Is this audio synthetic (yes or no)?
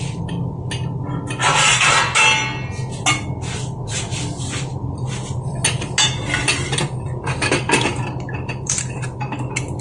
no